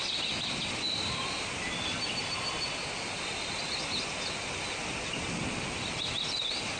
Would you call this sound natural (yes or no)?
yes